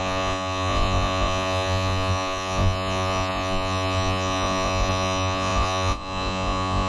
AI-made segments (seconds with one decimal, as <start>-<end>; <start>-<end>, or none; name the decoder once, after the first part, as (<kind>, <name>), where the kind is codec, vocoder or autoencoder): 0.0-6.9 (vocoder, Vocos)